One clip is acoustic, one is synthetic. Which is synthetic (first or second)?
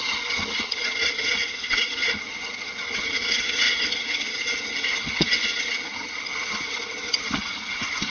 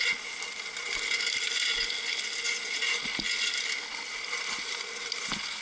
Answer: first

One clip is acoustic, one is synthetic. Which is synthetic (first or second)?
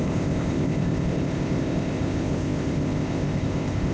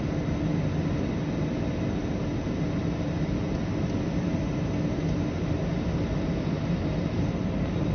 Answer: first